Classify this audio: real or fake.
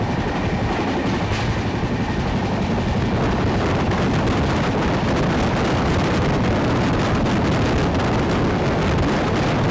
real